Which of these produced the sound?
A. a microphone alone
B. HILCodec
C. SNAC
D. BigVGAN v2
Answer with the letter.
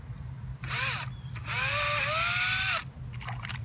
A